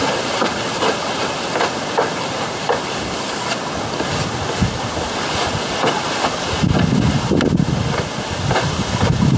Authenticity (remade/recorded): recorded